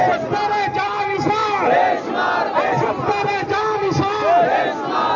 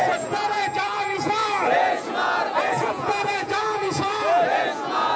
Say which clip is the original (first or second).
first